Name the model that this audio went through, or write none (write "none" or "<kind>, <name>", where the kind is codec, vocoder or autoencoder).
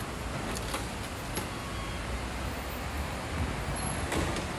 none